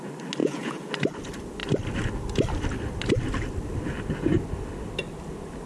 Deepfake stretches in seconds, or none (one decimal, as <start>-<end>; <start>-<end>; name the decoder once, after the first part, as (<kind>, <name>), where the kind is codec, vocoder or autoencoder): 0.4-0.9 (vocoder, Vocos)